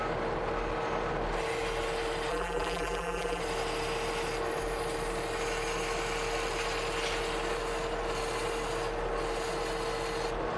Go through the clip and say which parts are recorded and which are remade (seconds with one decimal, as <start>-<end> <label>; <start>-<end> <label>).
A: 0.0-2.3 recorded; 2.3-3.4 remade; 3.4-10.6 recorded